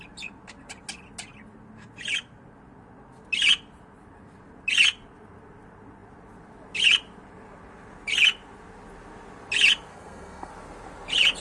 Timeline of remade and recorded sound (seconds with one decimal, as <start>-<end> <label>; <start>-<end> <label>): 0.0-9.9 recorded; 9.9-10.5 remade; 10.5-11.4 recorded